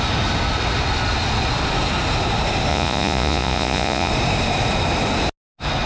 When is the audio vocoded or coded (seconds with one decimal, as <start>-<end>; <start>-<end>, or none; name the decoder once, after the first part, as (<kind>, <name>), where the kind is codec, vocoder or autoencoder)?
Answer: 2.7-4.1 (vocoder, Vocos)